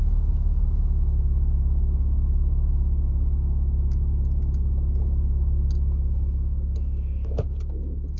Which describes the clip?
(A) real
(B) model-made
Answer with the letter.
A